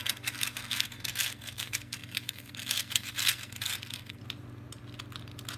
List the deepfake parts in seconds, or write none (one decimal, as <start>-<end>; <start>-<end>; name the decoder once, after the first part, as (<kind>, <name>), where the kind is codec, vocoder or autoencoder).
0.0-4.2 (codec, SNAC)